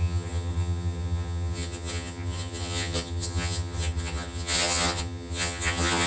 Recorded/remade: remade